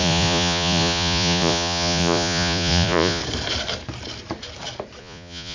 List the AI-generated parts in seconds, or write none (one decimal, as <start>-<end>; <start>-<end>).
0.0-3.2; 5.0-5.5